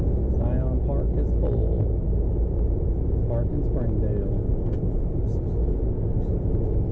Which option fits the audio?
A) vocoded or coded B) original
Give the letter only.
B